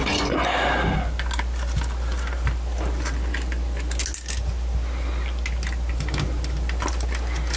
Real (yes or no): yes